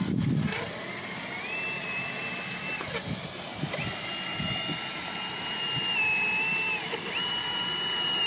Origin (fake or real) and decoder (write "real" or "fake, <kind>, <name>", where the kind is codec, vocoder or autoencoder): real